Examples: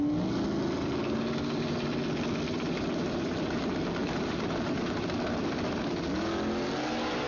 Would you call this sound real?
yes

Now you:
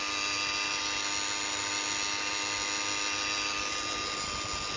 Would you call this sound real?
yes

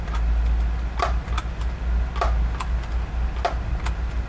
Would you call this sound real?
yes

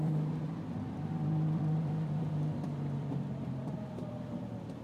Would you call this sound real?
no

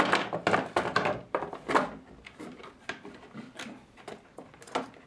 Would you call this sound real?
yes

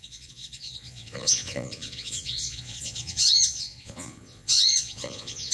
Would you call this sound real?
no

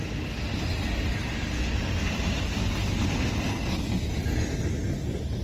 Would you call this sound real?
yes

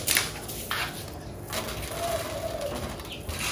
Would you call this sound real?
yes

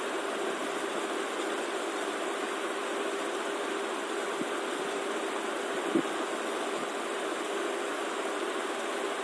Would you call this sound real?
yes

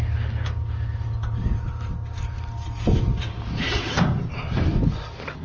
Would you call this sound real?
yes